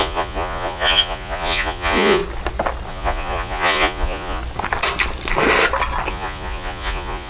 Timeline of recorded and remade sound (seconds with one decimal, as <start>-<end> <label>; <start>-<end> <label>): 0.0-2.2 remade; 2.2-2.9 recorded; 2.9-4.4 remade; 4.4-6.1 recorded; 6.1-7.3 remade